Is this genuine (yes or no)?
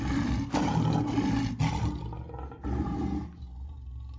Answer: yes